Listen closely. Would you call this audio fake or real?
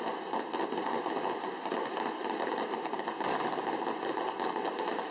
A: real